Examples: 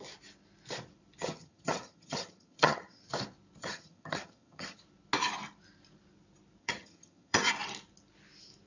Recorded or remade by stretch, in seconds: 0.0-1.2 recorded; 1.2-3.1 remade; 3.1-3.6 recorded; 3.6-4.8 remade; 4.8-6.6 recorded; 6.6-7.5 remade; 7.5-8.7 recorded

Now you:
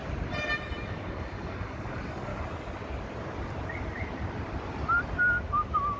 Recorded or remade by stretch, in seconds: 0.0-0.9 recorded; 0.9-2.3 remade; 2.3-6.0 recorded